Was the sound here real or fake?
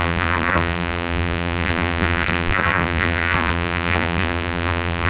fake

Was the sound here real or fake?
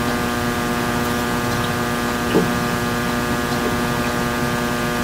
real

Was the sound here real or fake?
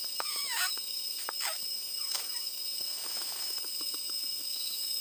fake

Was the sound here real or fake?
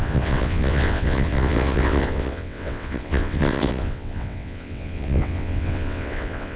fake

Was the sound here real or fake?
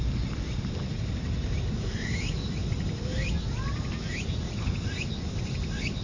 real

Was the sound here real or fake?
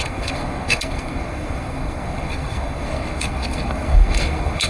fake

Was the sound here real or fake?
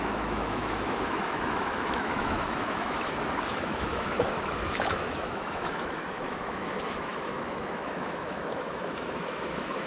fake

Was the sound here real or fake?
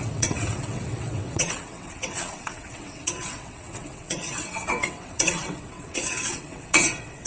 fake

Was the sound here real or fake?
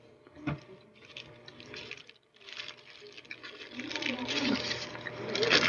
real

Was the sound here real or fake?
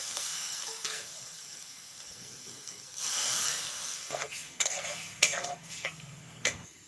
fake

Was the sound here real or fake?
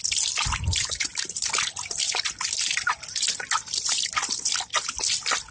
real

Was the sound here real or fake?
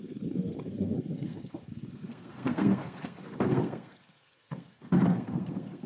fake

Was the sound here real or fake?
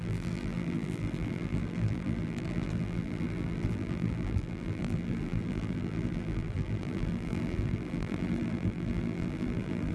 fake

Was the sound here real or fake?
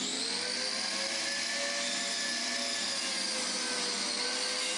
real